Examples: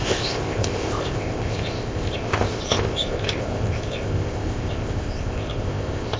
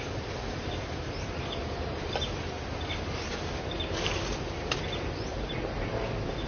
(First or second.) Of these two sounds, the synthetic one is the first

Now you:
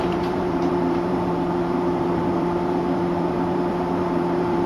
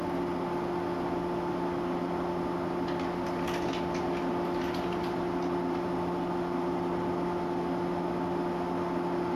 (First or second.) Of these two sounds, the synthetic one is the first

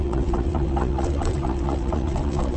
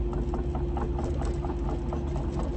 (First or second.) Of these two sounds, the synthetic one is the first